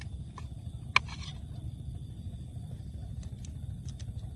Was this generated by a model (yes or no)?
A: no